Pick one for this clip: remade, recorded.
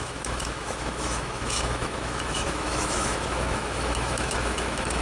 remade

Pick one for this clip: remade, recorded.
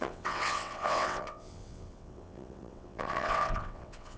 remade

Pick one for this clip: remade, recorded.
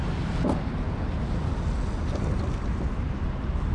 recorded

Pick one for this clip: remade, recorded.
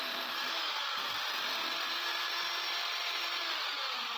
recorded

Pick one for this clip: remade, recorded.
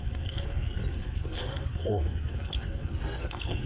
remade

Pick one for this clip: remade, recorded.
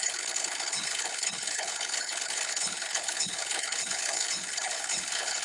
remade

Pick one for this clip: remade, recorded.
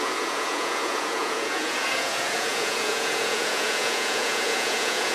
remade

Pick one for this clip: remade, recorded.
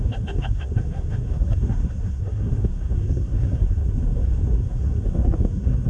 remade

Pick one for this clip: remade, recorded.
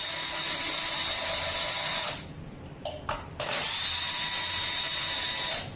recorded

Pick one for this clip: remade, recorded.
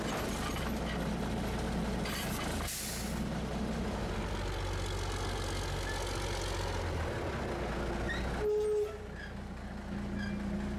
recorded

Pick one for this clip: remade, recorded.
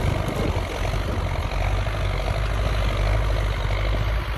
recorded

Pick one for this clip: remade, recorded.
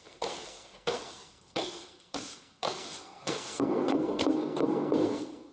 remade